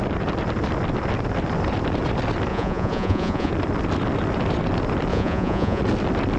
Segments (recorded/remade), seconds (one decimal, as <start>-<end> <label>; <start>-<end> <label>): 0.0-2.5 recorded; 2.5-3.5 remade; 3.5-5.1 recorded; 5.1-5.8 remade; 5.8-6.4 recorded